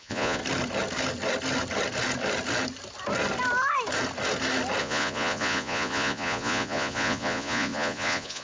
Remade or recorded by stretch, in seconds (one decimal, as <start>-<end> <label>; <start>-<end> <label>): 0.0-0.4 remade; 0.4-4.8 recorded; 4.8-8.4 remade